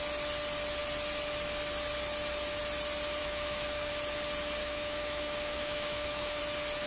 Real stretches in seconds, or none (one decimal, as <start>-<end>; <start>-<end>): 0.0-3.2; 3.9-4.6; 6.4-6.9